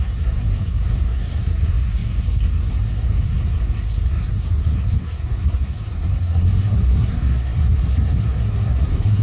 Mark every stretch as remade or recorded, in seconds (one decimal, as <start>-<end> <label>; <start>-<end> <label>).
0.0-9.2 remade